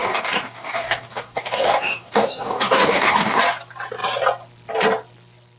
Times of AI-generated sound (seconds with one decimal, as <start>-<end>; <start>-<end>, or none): 0.0-3.4